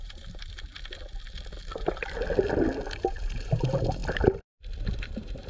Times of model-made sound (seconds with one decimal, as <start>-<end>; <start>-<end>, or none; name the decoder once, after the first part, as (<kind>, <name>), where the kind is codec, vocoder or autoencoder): 0.0-0.7 (vocoder, BigVGAN v2); 3.0-4.0; 4.9-5.5